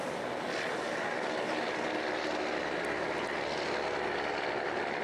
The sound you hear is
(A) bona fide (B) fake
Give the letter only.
A